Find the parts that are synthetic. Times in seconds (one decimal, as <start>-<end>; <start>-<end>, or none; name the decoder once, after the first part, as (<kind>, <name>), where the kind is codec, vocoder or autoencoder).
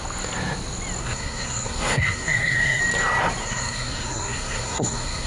1.0-2.8 (codec, SNAC); 3.4-5.3